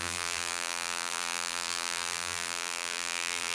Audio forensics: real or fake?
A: fake